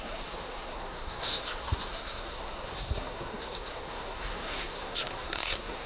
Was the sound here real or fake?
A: fake